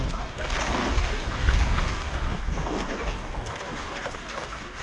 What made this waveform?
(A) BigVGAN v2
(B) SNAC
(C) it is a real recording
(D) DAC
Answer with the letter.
D